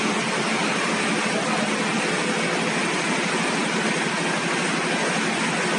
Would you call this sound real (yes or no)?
yes